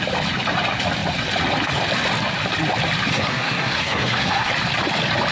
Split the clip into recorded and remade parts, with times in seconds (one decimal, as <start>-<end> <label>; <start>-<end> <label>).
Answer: 0.0-3.1 recorded; 3.1-4.5 remade; 4.5-5.3 recorded